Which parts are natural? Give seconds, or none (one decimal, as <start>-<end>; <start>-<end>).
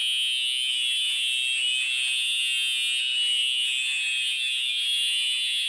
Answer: 0.0-0.7; 2.4-3.0